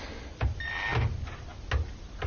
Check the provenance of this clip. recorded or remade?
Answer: recorded